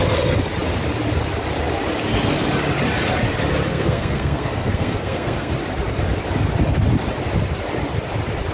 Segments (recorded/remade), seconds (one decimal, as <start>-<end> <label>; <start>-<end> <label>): 0.0-3.7 recorded; 3.7-5.5 remade; 5.5-8.5 recorded